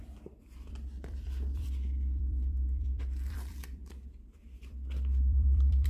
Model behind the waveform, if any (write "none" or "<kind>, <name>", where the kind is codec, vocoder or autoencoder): vocoder, BigVGAN v2